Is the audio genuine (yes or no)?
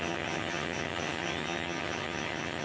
no